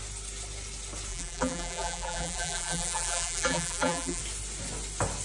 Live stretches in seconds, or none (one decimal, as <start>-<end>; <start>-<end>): 0.0-1.1; 4.2-5.2